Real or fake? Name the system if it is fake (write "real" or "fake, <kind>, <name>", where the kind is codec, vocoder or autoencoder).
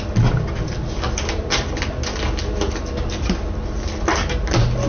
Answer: real